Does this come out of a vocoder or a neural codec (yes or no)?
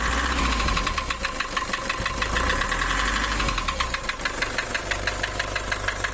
no